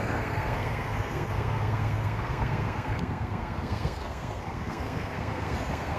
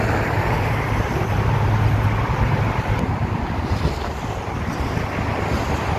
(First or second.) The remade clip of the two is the first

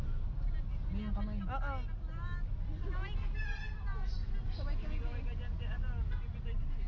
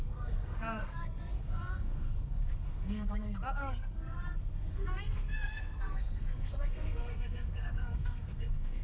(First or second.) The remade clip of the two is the second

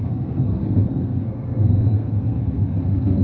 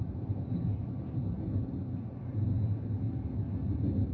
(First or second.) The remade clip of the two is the first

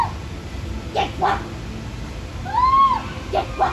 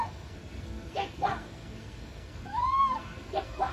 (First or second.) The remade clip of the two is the second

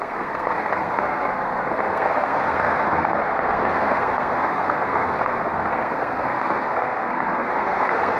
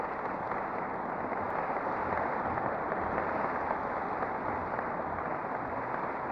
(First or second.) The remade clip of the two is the first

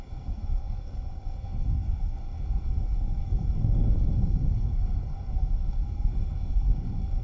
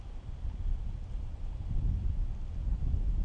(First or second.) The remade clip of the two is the first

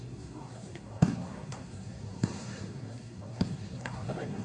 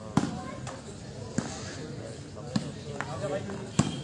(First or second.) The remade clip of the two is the first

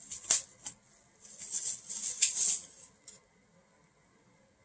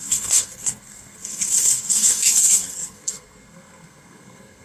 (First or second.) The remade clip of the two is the second